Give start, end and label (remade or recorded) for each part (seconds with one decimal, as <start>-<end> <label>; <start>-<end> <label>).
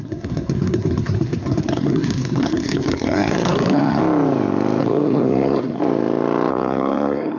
0.0-4.0 remade; 4.0-4.8 recorded; 4.8-5.8 remade; 5.8-6.5 recorded; 6.5-7.4 remade